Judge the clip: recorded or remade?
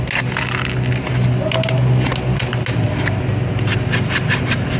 recorded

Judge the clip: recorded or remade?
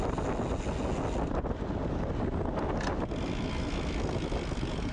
recorded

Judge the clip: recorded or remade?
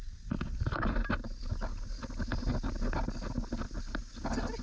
recorded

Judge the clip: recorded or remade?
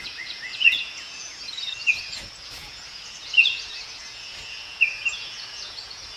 remade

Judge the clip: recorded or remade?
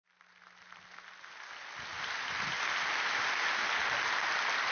recorded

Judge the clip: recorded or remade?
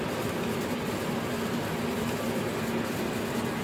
recorded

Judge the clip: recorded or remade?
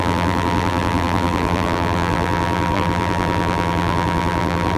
remade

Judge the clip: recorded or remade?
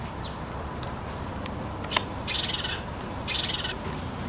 recorded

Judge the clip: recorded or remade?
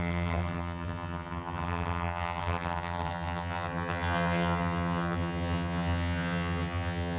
remade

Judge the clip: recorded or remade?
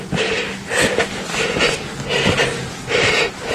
recorded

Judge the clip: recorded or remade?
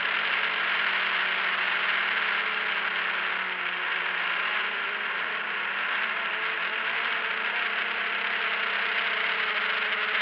recorded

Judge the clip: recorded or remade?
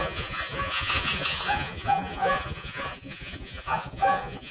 remade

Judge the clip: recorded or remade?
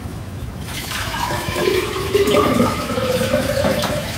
remade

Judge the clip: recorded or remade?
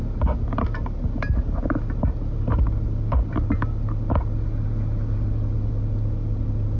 recorded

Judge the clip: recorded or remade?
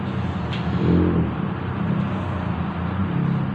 recorded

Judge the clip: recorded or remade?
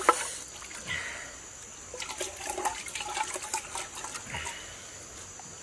recorded